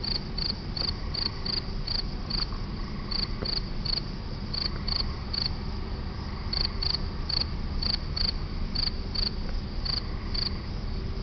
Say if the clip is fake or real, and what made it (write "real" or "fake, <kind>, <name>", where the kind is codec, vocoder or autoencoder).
real